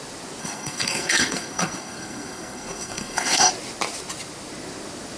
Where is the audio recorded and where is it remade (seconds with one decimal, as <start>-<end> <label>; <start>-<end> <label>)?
0.0-0.4 recorded; 0.4-3.5 remade; 3.5-5.2 recorded